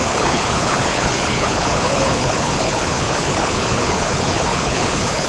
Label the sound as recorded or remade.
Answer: remade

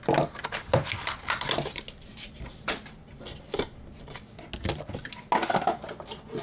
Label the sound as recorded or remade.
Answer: recorded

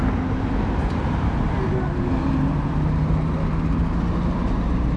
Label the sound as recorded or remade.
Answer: recorded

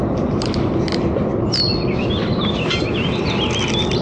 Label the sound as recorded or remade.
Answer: recorded